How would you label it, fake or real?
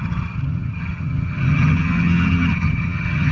fake